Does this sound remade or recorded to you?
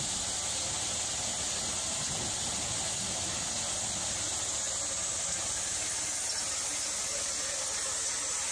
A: recorded